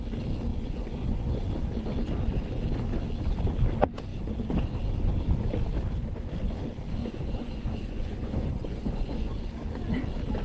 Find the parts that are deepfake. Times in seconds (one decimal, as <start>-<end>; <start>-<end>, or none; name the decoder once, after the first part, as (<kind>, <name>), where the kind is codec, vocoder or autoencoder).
0.5-1.4 (vocoder, Vocos); 7.0-9.3